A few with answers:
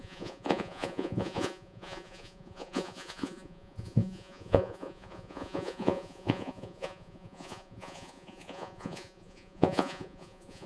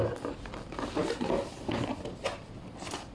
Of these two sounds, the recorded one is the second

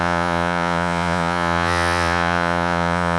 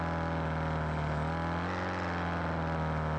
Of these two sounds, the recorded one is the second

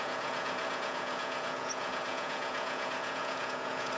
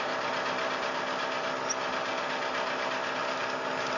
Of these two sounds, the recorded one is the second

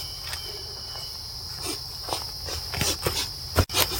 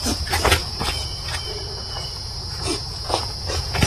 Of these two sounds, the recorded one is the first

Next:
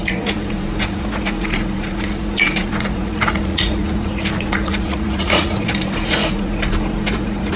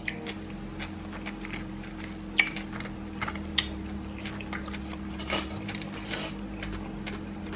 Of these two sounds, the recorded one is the second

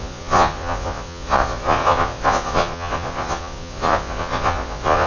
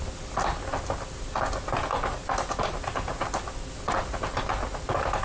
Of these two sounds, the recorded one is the second